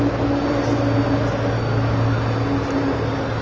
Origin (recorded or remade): recorded